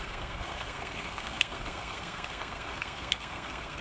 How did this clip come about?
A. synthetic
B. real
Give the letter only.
A